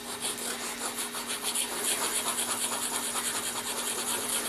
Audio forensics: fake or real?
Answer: real